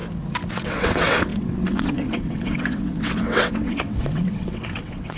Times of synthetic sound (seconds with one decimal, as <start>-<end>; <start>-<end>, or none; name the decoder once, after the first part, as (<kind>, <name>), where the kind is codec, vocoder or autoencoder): 0.5-5.2 (vocoder, WaveNeXt)